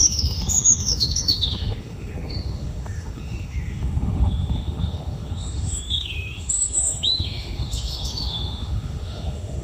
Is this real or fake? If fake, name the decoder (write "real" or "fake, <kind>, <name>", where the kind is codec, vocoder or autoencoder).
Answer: fake, autoencoder, DAC-VAE